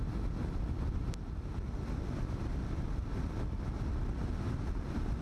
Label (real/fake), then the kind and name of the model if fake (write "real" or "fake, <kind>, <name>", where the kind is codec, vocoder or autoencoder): real